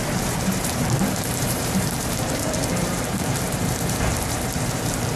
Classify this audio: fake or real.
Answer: fake